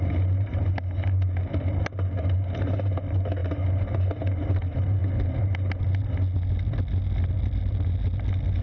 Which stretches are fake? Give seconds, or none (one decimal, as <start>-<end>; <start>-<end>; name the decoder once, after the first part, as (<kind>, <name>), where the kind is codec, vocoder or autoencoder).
none